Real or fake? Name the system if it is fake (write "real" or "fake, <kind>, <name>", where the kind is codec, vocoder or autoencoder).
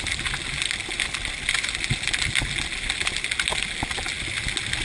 real